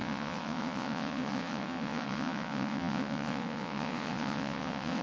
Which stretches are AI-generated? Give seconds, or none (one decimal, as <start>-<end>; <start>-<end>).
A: 0.0-5.0